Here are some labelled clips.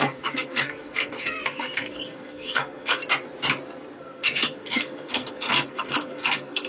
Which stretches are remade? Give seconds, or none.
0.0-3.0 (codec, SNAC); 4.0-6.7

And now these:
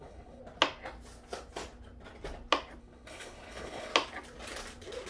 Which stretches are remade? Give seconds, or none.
0.0-0.4 (codec, HILCodec); 2.8-3.9